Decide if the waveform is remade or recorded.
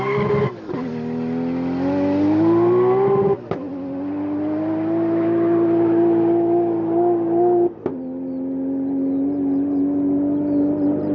recorded